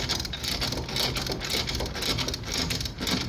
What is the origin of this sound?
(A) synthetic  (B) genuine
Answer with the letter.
B